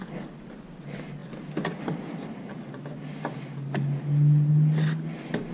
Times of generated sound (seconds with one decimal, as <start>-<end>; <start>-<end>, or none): none

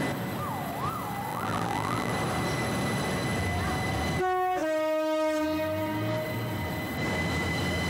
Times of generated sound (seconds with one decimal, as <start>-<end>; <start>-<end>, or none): 1.3-2.1

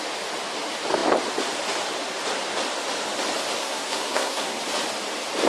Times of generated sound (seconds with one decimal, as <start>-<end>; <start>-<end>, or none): 3.6-4.6

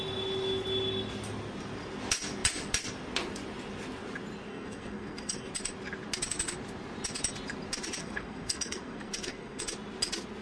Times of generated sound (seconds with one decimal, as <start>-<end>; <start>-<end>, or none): 4.5-5.5; 8.0-9.6

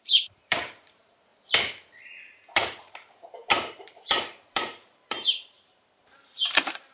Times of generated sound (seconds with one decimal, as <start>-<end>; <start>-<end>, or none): 0.0-1.3; 2.3-6.9

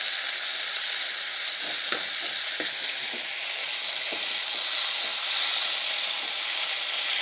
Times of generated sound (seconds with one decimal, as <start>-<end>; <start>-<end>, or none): 0.5-4.8

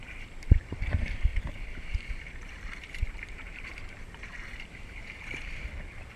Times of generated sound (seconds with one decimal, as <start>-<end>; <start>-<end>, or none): 0.0-6.2